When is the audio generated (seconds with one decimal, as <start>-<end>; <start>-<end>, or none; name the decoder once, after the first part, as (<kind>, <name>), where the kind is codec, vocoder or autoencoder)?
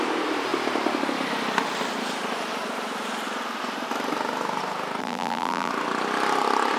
5.0-5.7 (vocoder, BigVGAN v2)